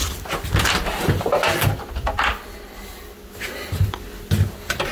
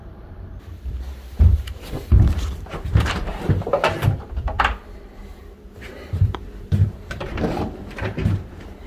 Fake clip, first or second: second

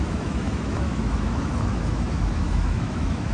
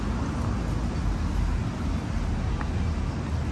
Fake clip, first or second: first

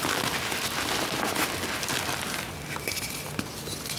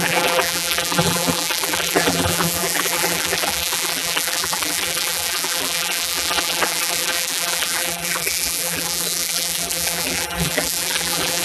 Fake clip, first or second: second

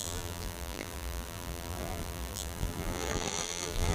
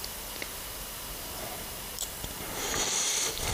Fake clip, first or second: first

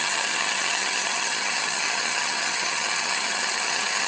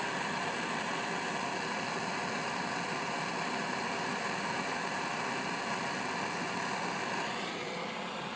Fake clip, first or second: first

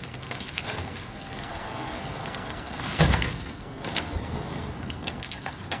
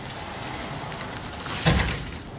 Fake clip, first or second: first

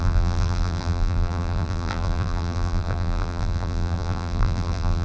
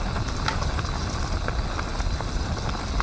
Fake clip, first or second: first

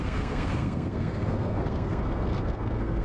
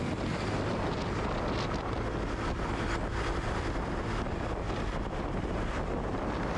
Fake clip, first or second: first